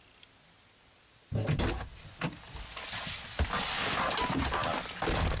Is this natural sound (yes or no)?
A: yes